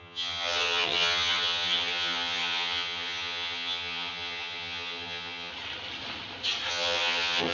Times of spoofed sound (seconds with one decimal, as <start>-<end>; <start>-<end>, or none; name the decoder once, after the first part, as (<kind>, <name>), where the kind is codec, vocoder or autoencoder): 0.0-5.5 (vocoder, HiFi-GAN); 6.7-7.5